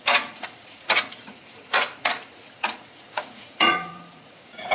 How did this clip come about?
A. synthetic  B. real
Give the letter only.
A